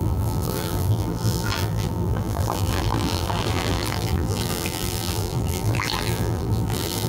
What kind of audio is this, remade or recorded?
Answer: remade